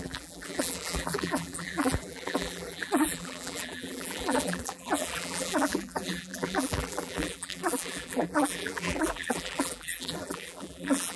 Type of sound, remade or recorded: remade